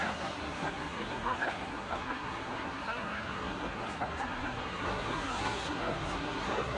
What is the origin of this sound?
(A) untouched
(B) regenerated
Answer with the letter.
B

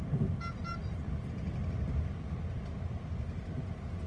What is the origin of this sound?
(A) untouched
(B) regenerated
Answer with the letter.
A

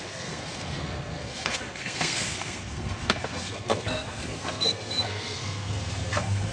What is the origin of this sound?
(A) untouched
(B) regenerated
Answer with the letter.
B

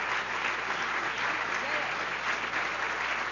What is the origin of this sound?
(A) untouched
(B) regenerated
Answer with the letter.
A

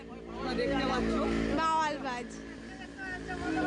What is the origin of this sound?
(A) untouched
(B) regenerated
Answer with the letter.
A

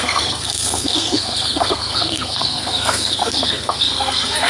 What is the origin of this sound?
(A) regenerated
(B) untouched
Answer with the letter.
A